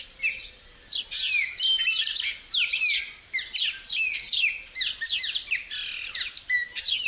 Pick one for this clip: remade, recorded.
recorded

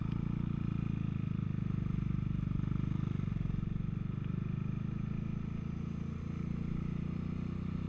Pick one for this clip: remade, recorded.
recorded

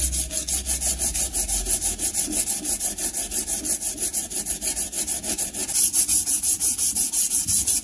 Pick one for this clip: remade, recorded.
recorded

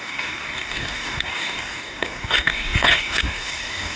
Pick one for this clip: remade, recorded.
remade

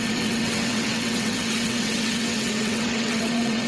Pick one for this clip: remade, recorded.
remade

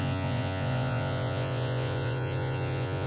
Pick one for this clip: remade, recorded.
remade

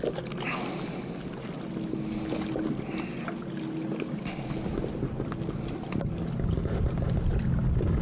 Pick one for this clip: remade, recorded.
recorded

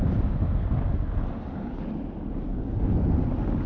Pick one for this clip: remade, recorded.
recorded